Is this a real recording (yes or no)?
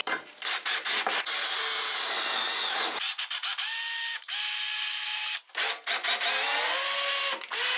yes